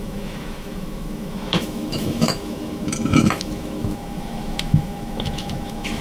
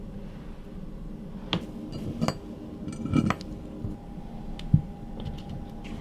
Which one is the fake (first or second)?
first